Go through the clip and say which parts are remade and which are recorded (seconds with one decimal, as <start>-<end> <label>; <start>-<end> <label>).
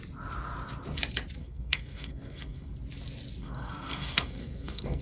0.0-1.4 recorded; 1.4-2.7 remade; 2.7-3.4 recorded; 3.4-5.0 remade